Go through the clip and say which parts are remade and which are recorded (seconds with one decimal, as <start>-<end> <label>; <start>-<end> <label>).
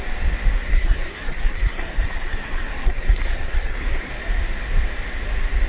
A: 0.0-0.7 recorded; 0.7-4.1 remade; 4.1-5.7 recorded